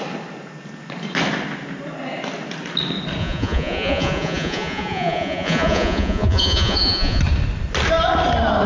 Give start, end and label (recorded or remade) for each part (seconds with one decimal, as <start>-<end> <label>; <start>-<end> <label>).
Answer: 0.0-3.2 recorded; 3.2-7.2 remade; 7.2-8.7 recorded